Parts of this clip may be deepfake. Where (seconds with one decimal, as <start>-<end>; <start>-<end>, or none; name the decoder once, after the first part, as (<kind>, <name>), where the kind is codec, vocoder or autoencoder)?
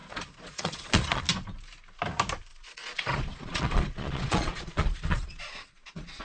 0.0-1.2 (vocoder, Vocos); 2.5-6.2